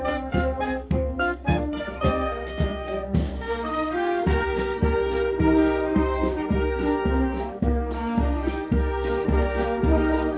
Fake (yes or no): yes